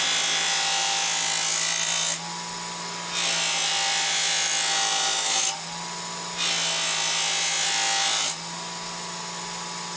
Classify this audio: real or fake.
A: real